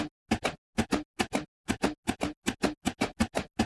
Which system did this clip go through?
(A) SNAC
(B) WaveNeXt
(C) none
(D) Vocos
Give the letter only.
C